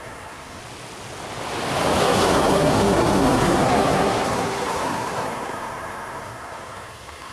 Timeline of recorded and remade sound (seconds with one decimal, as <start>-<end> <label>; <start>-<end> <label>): 0.0-0.6 remade; 0.6-2.0 recorded; 2.0-7.3 remade